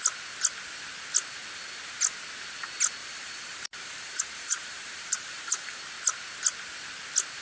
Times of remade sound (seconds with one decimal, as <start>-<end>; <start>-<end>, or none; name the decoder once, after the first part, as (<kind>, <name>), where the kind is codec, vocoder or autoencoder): 3.0-5.8 (vocoder, BigVGAN v2)